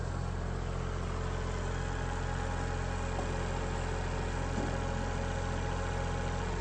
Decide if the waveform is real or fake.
real